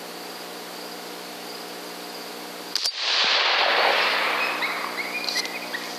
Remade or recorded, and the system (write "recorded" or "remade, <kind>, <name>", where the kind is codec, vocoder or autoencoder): recorded